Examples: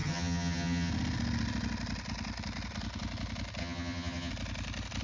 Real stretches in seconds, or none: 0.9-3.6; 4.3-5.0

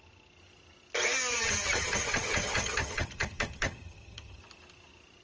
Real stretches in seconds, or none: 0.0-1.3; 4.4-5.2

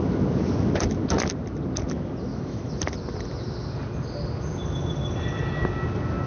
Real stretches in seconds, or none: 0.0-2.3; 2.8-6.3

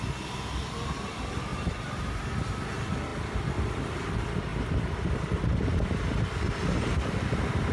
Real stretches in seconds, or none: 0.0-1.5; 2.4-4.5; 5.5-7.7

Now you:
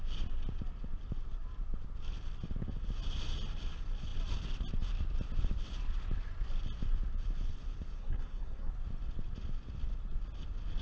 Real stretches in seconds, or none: 0.0-8.0; 8.7-10.8

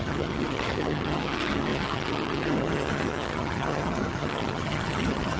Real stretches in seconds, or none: none